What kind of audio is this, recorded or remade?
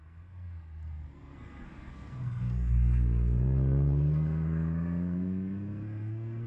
remade